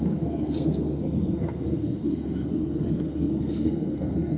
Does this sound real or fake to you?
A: fake